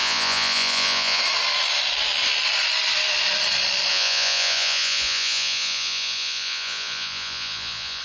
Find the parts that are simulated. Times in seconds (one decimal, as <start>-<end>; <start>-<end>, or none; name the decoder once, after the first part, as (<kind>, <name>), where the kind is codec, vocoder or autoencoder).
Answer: 0.0-1.2 (vocoder, Vocos); 3.9-8.0